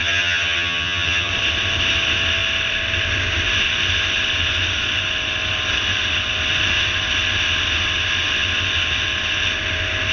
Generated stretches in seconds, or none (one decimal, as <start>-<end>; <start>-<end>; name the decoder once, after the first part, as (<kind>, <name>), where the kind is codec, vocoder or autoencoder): 0.0-1.3 (vocoder, HiFi-GAN)